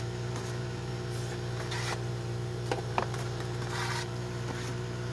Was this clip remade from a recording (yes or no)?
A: yes